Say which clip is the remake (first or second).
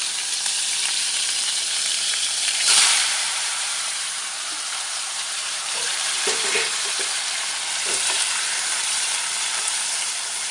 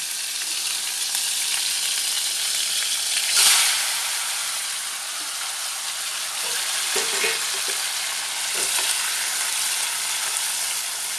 first